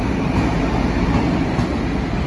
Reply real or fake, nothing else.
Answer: real